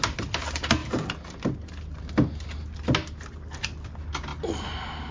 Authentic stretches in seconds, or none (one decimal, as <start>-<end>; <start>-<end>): 0.0-5.1